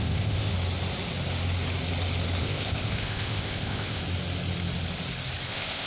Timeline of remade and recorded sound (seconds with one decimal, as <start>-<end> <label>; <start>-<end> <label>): 0.0-0.5 remade; 0.5-2.4 recorded; 2.4-4.0 remade; 4.0-5.5 recorded; 5.5-5.9 remade

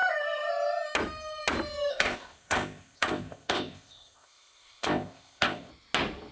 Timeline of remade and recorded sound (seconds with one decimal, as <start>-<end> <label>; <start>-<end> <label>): 0.0-1.9 recorded; 1.9-5.7 remade; 5.7-6.3 recorded

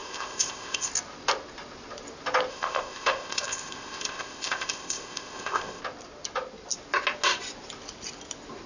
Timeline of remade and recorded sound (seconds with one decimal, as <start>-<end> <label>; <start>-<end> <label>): 0.0-0.9 remade; 0.9-2.5 recorded; 2.5-5.8 remade; 5.8-8.7 recorded

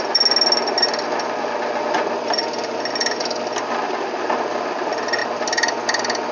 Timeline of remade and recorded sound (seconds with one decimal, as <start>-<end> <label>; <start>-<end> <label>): 0.0-6.3 recorded

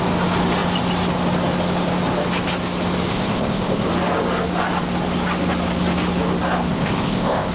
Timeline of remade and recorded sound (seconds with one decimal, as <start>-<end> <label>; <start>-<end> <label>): 0.0-3.1 recorded; 3.1-3.9 remade; 3.9-6.7 recorded; 6.7-7.5 remade

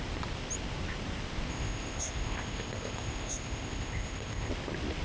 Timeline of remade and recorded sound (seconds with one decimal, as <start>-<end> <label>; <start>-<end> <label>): 0.0-1.5 recorded; 1.5-4.5 remade; 4.5-5.0 recorded